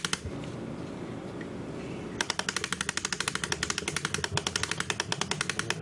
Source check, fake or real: real